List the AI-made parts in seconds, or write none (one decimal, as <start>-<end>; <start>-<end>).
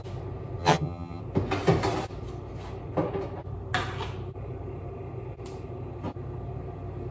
0.6-1.2